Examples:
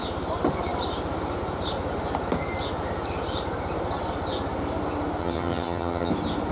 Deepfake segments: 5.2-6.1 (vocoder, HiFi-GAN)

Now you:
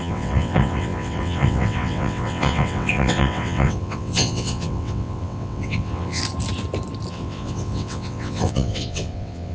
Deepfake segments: 0.0-6.2 (vocoder, WaveNeXt); 7.1-9.5

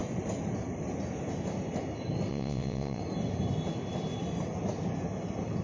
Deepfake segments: 2.3-3.0 (vocoder, WaveNeXt)

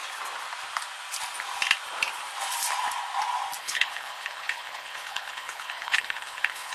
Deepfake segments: 3.6-6.7 (codec, HILCodec)

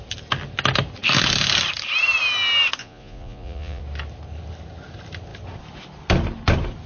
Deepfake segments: 2.8-3.8 (vocoder, Vocos)

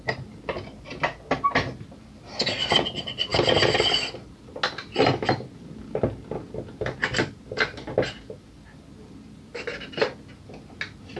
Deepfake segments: none

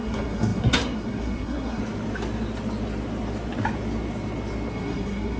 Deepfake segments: 0.0-1.8 (codec, SNAC); 4.7-5.4

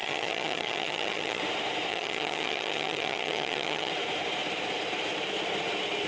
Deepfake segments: 0.0-1.4 (vocoder, HiFi-GAN); 1.9-3.9